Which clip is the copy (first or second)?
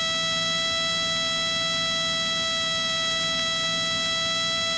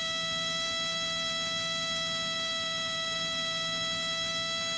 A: second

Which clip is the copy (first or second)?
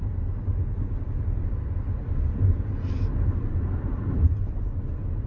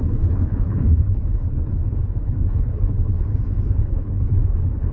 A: second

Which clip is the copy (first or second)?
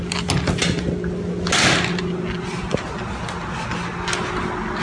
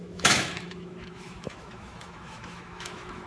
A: second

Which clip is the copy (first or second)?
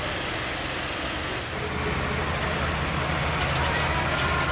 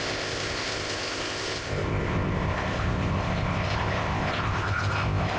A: second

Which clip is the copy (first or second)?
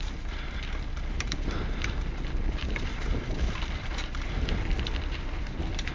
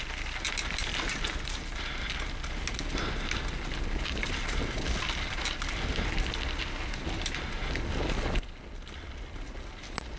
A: first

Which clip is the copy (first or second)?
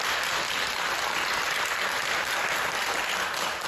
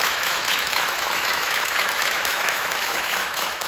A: second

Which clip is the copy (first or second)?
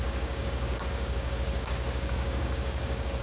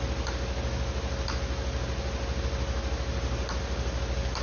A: first